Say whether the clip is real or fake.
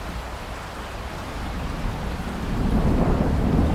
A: fake